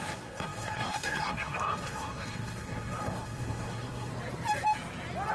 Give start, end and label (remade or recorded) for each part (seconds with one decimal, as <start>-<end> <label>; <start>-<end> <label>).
0.0-4.1 remade; 4.1-5.3 recorded